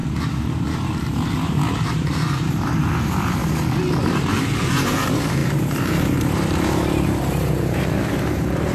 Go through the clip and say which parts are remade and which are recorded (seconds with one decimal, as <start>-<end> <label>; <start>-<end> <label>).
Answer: 0.0-3.4 remade; 3.4-4.0 recorded; 4.0-8.7 remade